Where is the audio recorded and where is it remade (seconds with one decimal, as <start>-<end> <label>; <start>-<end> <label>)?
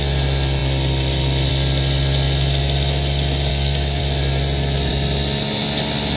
0.0-3.5 recorded; 3.5-4.0 remade; 4.0-6.2 recorded